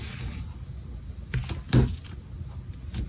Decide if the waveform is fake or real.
real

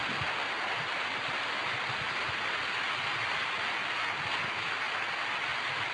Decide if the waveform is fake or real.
real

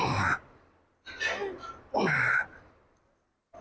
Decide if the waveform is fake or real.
real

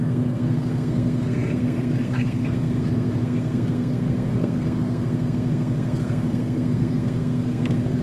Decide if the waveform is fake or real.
fake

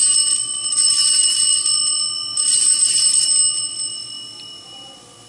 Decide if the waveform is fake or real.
real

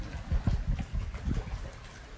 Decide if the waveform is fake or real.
real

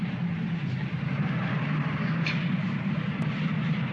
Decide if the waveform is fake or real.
real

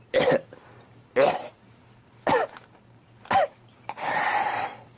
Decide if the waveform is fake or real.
real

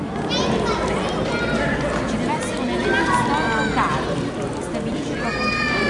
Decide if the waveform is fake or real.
real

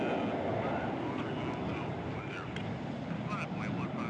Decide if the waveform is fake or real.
real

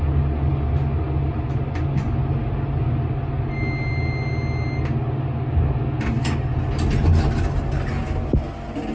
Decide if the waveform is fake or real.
real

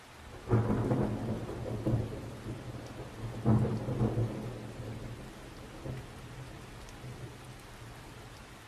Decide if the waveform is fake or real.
real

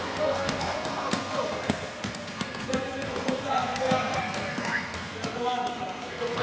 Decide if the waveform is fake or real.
fake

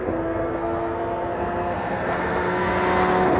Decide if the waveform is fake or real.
fake